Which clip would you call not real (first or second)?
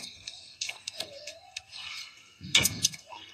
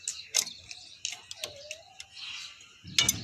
first